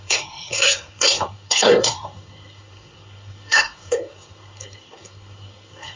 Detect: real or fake fake